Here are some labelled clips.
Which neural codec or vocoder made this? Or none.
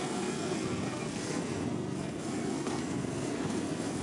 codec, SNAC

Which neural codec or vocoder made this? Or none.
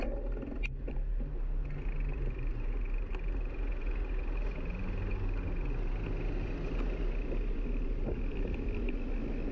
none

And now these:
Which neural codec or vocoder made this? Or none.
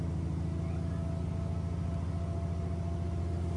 none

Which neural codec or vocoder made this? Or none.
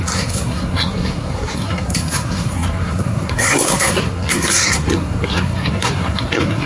codec, SNAC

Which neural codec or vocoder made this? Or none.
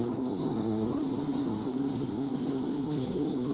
codec, SNAC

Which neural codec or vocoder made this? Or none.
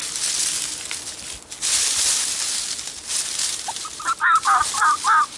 none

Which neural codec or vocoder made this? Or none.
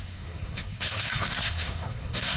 codec, SNAC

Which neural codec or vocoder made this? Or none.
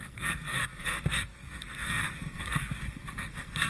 codec, SNAC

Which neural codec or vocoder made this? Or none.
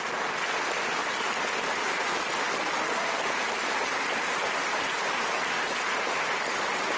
none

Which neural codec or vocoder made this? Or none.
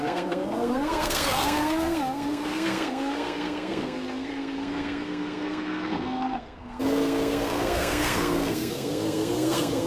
codec, SNAC